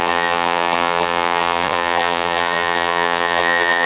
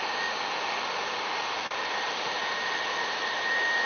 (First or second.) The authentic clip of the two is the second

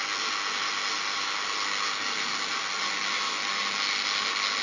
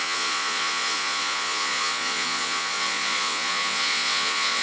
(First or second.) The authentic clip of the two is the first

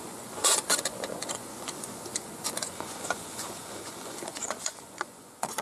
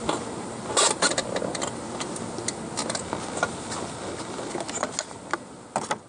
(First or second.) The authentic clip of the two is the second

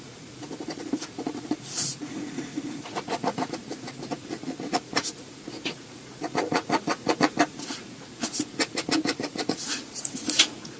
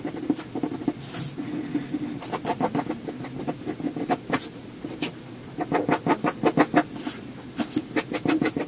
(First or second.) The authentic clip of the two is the second